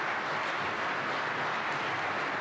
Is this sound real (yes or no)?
yes